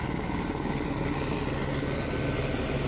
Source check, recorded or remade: recorded